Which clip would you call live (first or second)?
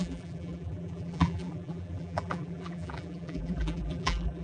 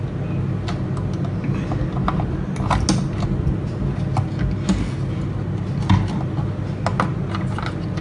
second